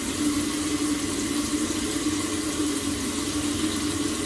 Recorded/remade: recorded